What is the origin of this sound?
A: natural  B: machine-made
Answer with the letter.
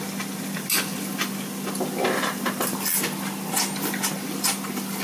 A